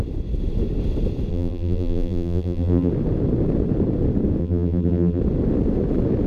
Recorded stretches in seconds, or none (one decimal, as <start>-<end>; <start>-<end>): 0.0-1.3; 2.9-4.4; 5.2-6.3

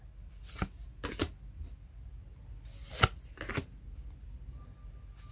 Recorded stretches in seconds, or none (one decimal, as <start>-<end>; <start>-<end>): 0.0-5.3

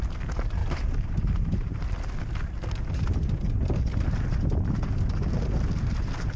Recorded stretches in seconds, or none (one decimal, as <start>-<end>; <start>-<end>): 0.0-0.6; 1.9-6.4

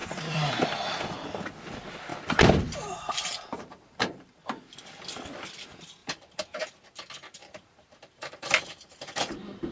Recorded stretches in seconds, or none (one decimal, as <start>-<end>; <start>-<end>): 0.5-2.1; 4.4-6.0; 6.6-7.4